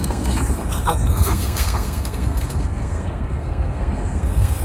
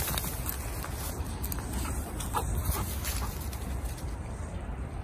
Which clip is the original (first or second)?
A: second